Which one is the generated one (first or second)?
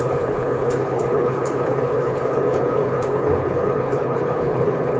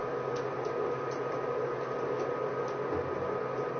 first